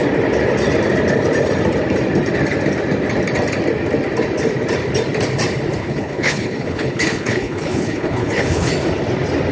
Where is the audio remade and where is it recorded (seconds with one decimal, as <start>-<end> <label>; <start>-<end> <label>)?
0.0-5.8 recorded; 5.8-8.7 remade; 8.7-9.5 recorded

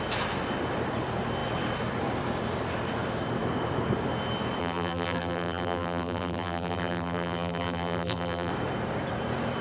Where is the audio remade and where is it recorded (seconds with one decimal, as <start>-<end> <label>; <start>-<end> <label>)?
0.0-4.6 recorded; 4.6-8.5 remade; 8.5-9.6 recorded

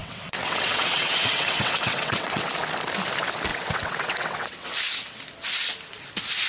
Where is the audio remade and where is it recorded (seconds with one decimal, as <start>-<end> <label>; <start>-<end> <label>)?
0.0-2.5 remade; 2.5-3.5 recorded; 3.5-5.2 remade; 5.2-6.5 recorded

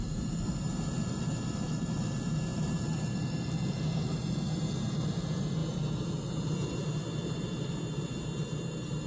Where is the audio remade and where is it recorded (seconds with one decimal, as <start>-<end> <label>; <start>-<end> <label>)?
0.0-9.1 remade

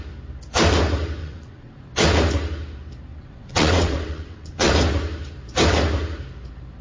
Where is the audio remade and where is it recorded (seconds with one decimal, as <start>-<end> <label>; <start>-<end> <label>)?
0.0-1.2 recorded; 1.2-1.7 remade; 1.7-3.1 recorded; 3.1-4.7 remade; 4.7-6.8 recorded

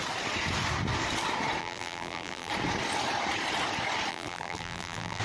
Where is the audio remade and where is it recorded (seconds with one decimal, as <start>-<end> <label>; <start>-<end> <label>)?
0.0-1.6 recorded; 1.6-2.5 remade; 2.5-4.1 recorded; 4.1-5.2 remade

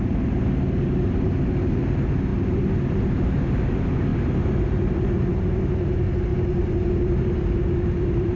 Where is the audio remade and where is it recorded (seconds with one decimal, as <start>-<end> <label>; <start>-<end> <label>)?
0.0-8.4 recorded

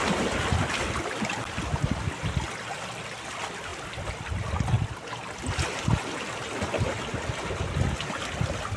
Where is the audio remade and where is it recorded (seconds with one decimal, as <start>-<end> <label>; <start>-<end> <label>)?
0.0-8.8 recorded